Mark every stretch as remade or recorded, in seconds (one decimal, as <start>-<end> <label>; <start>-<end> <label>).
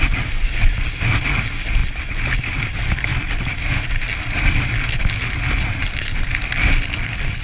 0.0-7.4 recorded